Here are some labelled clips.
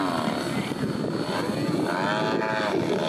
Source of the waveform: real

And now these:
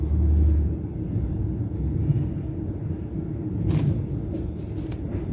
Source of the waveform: real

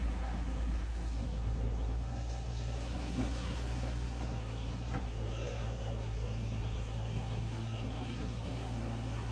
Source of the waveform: fake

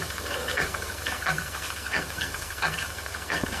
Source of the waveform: fake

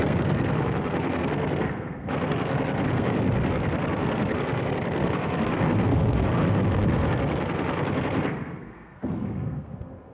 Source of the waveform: fake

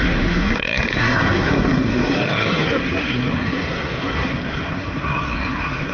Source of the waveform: fake